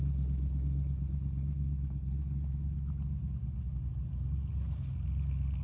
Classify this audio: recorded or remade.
recorded